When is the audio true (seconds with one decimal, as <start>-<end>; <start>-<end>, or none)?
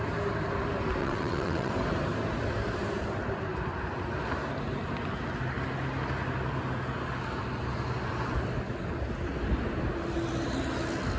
0.0-1.0; 1.7-11.2